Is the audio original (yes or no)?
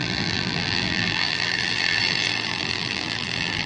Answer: no